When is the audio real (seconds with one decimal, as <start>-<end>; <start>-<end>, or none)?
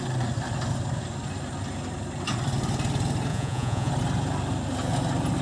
0.0-3.3; 3.9-5.4